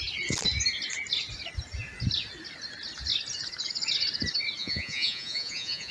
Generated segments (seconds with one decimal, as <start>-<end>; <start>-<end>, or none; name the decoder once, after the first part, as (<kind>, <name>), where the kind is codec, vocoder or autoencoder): 4.6-5.9 (vocoder, Vocos)